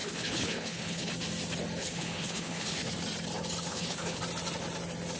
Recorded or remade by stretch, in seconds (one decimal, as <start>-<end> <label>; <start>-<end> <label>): 0.0-1.1 remade; 1.1-1.8 recorded; 1.8-2.9 remade; 2.9-3.7 recorded; 3.7-4.2 remade; 4.2-5.2 recorded